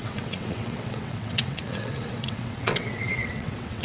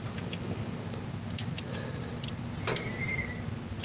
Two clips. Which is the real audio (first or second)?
second